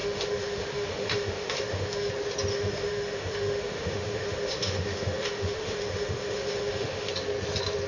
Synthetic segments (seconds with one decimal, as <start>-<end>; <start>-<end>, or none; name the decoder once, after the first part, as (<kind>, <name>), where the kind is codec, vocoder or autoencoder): 0.0-2.1 (autoencoder, DAC-VAE); 2.5-7.1